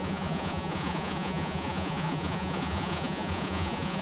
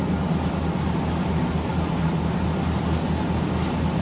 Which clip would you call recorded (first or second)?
second